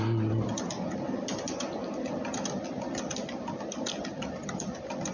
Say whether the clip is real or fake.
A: real